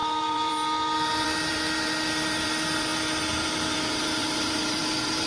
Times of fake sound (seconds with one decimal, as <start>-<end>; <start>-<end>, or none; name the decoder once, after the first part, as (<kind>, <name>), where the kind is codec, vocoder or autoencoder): 0.0-5.3 (vocoder, BigVGAN v2)

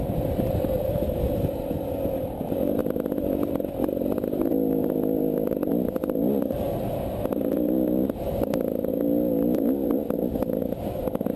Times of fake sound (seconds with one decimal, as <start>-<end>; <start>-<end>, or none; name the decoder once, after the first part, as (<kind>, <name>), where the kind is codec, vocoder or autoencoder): none

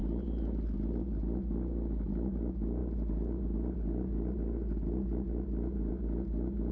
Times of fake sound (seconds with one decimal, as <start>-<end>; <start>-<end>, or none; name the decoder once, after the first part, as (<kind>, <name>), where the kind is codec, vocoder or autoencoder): none

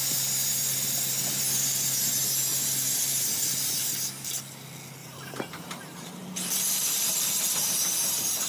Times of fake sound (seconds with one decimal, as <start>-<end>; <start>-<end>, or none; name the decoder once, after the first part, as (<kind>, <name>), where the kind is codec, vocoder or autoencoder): 2.5-3.8 (vocoder, BigVGAN v2); 5.0-7.7

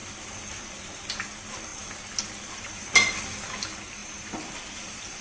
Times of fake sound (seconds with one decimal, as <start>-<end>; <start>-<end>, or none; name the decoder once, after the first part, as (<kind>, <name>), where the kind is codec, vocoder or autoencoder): 0.5-5.2 (vocoder, BigVGAN v2)